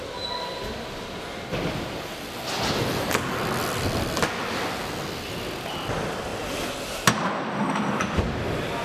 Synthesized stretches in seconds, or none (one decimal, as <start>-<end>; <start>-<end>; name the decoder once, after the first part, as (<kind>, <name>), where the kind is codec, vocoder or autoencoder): none